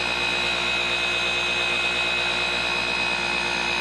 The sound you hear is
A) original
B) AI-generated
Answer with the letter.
A